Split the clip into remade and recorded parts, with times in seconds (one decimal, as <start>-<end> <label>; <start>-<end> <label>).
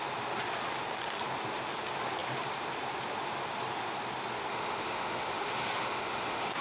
0.0-4.5 recorded; 4.5-6.6 remade